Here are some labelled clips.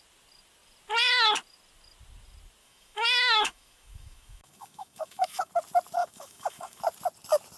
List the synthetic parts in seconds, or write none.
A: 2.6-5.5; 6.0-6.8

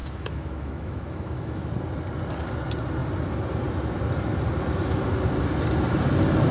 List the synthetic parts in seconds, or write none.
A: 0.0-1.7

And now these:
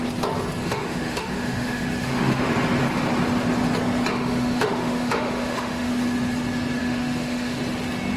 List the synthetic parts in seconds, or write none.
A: 0.6-2.5; 4.1-5.9; 6.8-7.6

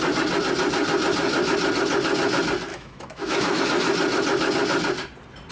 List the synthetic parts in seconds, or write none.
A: 2.7-3.6

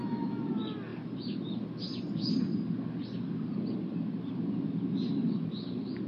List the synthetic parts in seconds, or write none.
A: 0.0-0.5